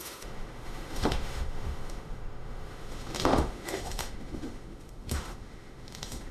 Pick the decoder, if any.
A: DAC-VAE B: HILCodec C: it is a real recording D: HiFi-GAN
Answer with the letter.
A